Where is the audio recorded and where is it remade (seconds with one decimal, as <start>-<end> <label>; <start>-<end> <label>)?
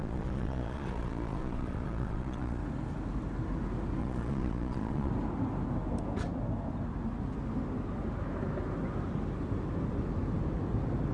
0.0-2.6 remade; 2.6-4.0 recorded; 4.0-5.1 remade; 5.1-11.1 recorded